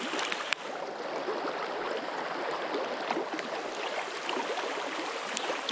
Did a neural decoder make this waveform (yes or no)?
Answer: no